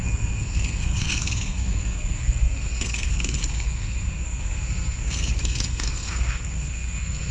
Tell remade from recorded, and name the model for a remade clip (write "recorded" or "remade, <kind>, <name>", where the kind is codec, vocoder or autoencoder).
remade, codec, SNAC